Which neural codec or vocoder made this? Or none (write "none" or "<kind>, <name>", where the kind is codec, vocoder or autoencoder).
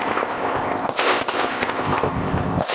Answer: codec, ZipCodec